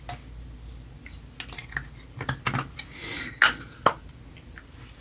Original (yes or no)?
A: yes